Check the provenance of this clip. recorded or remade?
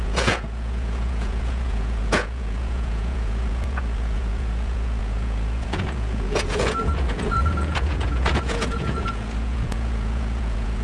remade